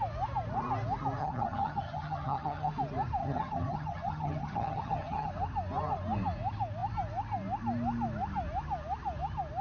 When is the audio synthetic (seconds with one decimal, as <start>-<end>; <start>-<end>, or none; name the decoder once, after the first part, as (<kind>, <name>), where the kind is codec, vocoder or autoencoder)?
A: 1.2-2.7 (vocoder, HiFi-GAN); 3.2-5.3